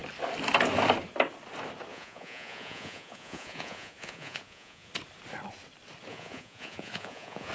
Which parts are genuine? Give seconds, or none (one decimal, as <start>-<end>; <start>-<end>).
0.0-1.9; 4.9-6.1